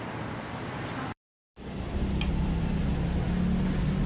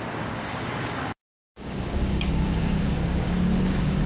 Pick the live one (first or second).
first